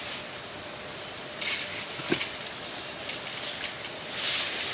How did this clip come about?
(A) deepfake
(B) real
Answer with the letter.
B